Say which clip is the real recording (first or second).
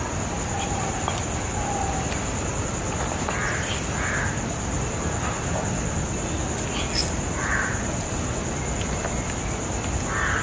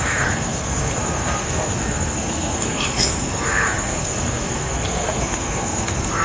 first